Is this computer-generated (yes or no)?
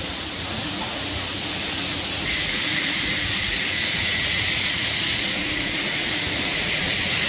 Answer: yes